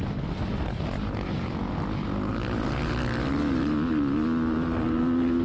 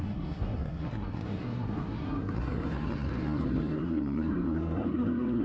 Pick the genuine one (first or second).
first